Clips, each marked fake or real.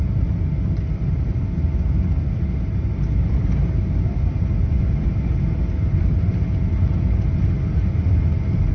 real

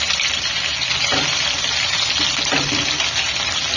real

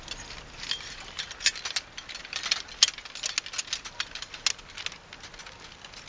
real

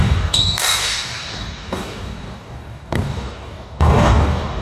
fake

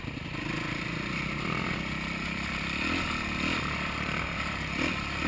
fake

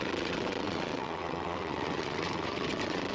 fake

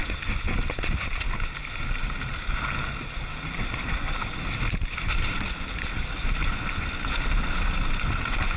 real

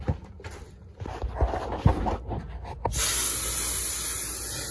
real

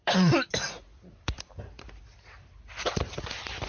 fake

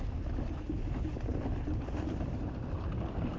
real